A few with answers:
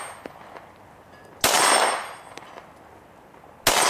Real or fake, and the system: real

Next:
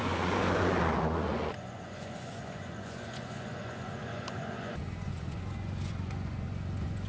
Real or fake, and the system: fake, vocoder, Vocos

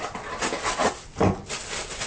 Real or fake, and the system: real